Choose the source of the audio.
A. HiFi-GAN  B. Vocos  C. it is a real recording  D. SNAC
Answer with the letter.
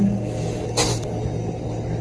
C